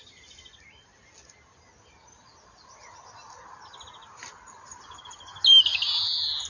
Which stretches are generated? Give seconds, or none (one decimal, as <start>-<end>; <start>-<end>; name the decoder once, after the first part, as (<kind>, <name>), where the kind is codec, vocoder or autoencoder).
none